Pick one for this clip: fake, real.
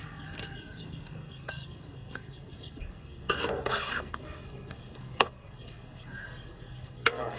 fake